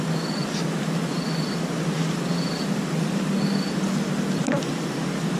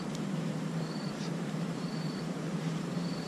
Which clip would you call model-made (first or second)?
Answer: second